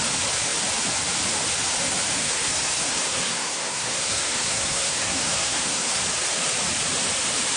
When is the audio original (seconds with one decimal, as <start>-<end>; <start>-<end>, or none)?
0.0-2.2; 6.0-7.6